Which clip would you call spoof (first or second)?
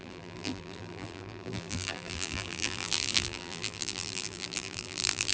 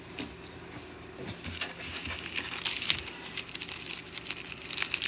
first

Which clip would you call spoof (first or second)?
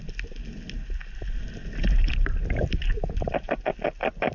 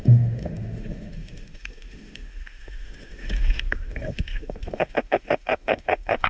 second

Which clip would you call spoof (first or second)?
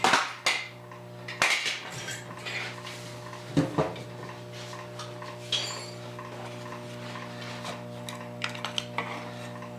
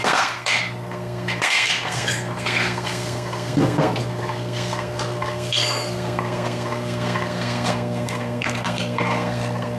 second